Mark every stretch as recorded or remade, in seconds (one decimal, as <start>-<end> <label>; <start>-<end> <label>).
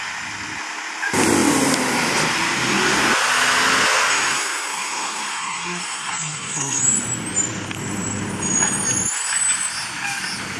0.0-4.1 recorded; 4.1-6.8 remade; 6.8-10.6 recorded